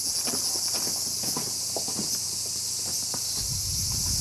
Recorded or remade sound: recorded